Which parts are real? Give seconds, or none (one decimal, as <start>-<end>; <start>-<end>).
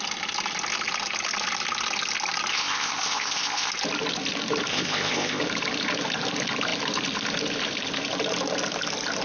0.0-2.5; 3.7-4.7; 5.4-9.2